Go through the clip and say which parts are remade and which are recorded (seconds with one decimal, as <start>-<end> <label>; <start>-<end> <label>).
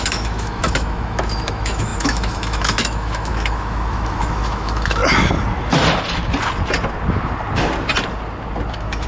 0.0-5.0 remade; 5.0-8.7 recorded; 8.7-9.1 remade